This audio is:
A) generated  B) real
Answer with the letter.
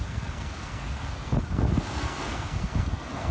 A